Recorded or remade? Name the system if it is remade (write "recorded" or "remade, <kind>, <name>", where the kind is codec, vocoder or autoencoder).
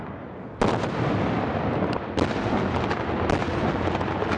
recorded